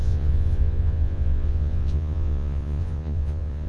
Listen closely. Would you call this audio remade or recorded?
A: remade